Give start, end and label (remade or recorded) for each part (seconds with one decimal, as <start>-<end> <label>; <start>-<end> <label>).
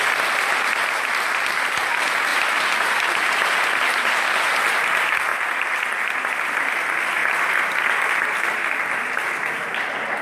0.0-2.3 recorded; 2.3-2.9 remade; 2.9-5.3 recorded; 5.3-5.8 remade; 5.8-10.2 recorded